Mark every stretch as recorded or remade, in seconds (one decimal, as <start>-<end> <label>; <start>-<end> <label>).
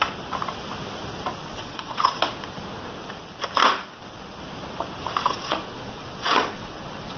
0.0-1.5 recorded; 1.5-2.2 remade; 2.2-5.2 recorded; 5.2-7.2 remade